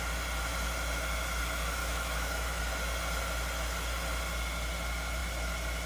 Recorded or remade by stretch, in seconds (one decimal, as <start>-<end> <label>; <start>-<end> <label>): 0.0-1.8 recorded; 1.8-2.6 remade; 2.6-5.9 recorded